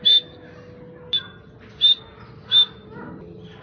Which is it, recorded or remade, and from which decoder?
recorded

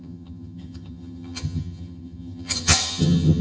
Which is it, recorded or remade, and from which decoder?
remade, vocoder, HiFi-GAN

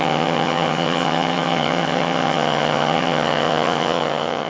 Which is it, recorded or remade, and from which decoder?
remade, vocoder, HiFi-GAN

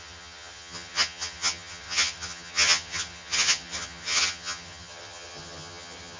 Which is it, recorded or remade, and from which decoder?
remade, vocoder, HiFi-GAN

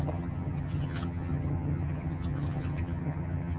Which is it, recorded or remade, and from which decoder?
remade, vocoder, HiFi-GAN